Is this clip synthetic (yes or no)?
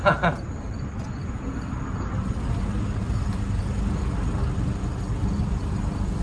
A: no